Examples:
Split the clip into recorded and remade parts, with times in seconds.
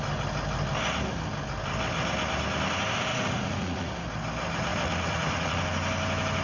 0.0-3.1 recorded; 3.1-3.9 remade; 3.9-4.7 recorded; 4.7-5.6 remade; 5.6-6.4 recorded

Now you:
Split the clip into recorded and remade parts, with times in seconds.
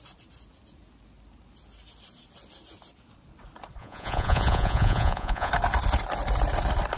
0.0-3.8 recorded; 3.8-5.5 remade; 5.5-7.0 recorded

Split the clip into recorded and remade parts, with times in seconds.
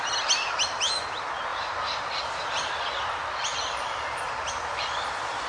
0.0-1.5 recorded; 1.5-2.4 remade; 2.4-3.5 recorded; 3.5-4.8 remade; 4.8-5.5 recorded